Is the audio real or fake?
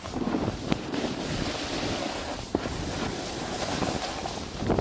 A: real